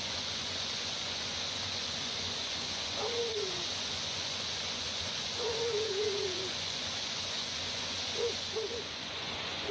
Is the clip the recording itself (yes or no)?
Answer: no